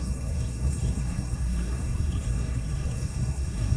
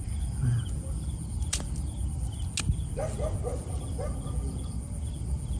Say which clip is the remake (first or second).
first